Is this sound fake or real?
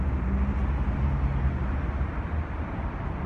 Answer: real